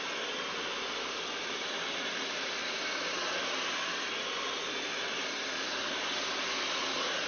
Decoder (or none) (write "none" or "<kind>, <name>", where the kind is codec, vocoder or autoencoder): none